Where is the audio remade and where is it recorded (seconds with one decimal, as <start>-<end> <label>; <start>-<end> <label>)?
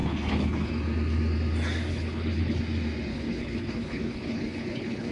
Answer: 0.0-0.7 remade; 0.7-1.9 recorded; 1.9-2.6 remade; 2.6-3.1 recorded; 3.1-5.1 remade